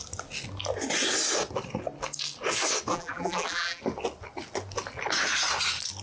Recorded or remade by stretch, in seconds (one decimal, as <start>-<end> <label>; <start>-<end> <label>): 0.0-2.9 recorded; 2.9-3.8 remade; 3.8-6.0 recorded